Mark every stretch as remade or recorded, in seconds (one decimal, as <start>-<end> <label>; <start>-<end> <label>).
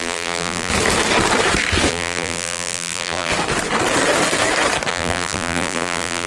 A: 0.0-0.7 remade; 0.7-1.9 recorded; 1.9-3.3 remade; 3.3-4.9 recorded; 4.9-6.3 remade